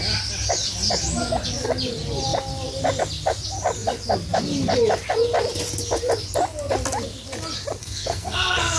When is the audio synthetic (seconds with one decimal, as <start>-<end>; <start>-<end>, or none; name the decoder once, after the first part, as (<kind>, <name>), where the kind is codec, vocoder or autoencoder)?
7.8-8.8 (codec, SNAC)